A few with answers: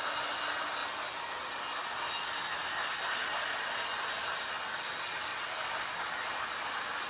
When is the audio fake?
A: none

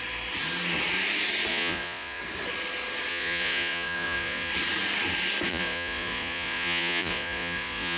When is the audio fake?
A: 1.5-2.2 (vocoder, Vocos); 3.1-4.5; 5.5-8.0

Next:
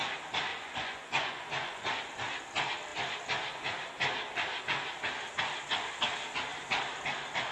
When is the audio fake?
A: 0.5-2.0 (vocoder, Vocos)

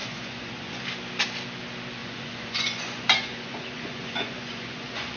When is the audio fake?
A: 0.0-0.8 (vocoder, Vocos); 2.0-5.2

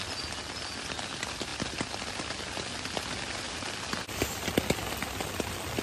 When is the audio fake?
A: none